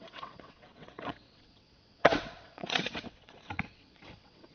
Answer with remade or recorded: remade